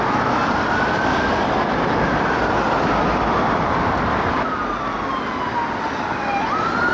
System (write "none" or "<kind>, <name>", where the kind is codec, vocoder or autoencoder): none